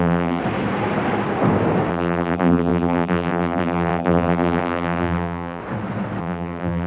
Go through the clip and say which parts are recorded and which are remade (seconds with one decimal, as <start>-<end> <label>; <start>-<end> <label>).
0.0-0.4 remade; 0.4-1.9 recorded; 1.9-5.6 remade; 5.6-6.2 recorded; 6.2-6.9 remade

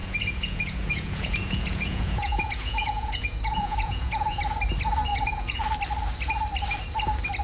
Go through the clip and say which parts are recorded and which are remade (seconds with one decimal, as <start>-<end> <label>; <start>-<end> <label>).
0.0-4.4 remade; 4.4-5.1 recorded; 5.1-5.6 remade; 5.6-7.4 recorded

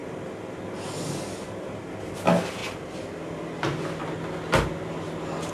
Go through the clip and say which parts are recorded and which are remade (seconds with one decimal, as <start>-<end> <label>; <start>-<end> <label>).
0.0-5.5 recorded

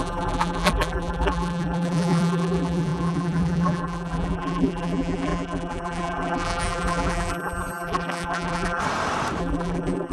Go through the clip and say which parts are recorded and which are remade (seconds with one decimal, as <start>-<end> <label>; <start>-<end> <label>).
0.0-8.8 remade; 8.8-9.4 recorded; 9.4-10.1 remade

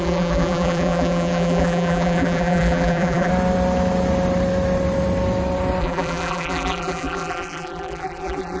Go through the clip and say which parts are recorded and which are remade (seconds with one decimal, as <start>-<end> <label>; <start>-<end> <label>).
0.0-3.3 remade; 3.3-5.8 recorded; 5.8-8.6 remade